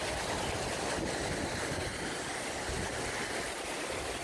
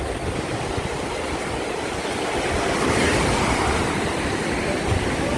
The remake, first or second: second